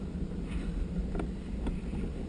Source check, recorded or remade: recorded